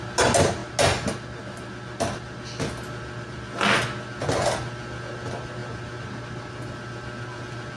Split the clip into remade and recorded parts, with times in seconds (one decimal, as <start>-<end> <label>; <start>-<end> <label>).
0.0-7.8 recorded